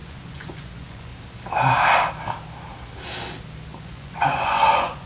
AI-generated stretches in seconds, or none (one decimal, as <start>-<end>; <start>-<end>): 0.0-1.1; 3.8-5.1